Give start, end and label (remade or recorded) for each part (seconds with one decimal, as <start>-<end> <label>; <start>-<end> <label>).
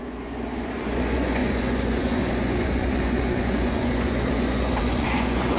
0.0-5.6 remade